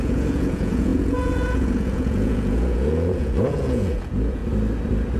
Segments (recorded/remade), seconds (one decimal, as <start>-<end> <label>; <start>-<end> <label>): 0.0-4.4 remade; 4.4-5.2 recorded